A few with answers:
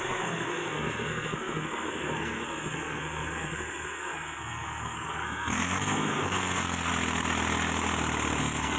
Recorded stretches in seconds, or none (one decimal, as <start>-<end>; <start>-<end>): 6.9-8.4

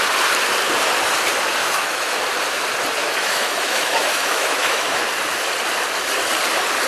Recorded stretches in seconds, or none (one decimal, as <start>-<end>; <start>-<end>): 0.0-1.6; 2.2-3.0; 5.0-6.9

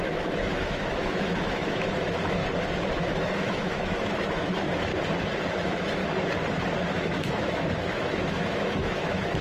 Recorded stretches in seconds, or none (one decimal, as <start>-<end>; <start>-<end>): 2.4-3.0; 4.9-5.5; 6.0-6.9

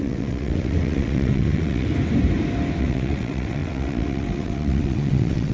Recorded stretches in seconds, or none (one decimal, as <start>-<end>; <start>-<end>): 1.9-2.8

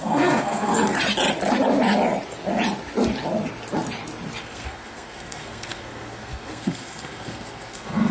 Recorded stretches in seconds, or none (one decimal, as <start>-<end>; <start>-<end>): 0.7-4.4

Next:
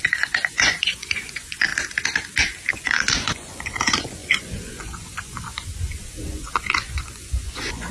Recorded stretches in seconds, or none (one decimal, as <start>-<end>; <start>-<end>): 1.7-2.7